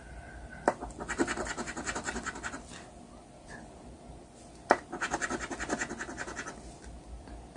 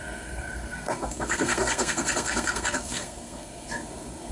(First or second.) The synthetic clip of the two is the second